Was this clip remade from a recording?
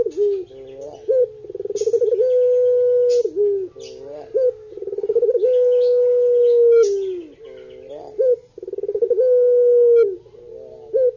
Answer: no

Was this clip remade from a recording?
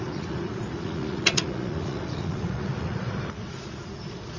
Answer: yes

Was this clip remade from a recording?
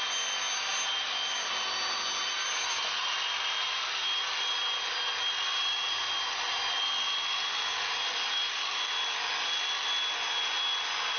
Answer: no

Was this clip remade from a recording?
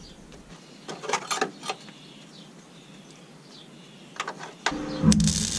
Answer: no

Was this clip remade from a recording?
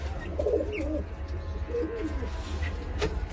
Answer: no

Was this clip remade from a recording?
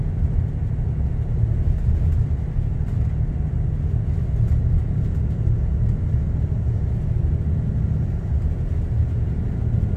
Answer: no